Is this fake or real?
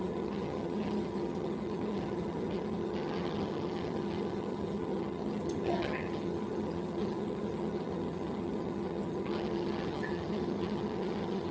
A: fake